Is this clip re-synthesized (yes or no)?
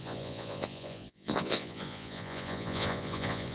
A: yes